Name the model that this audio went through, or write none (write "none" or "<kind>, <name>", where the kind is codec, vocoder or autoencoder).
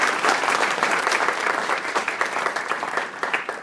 vocoder, BigVGAN v2